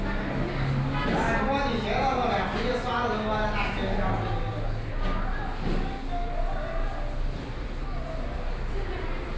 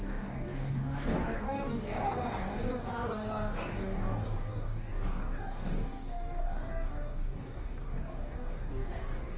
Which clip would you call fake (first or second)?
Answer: second